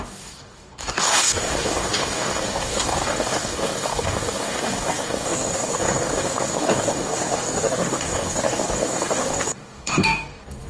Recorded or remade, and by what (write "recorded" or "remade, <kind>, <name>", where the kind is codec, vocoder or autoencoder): remade, codec, DAC